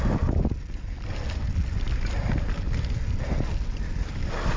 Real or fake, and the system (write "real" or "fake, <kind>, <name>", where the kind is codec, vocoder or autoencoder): real